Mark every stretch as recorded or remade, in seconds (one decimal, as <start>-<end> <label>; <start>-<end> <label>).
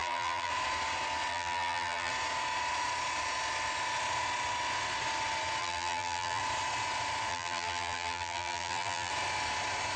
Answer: 0.0-0.5 remade; 0.5-1.3 recorded; 1.3-2.1 remade; 2.1-5.6 recorded; 5.6-6.4 remade; 6.4-7.3 recorded; 7.3-9.1 remade; 9.1-10.0 recorded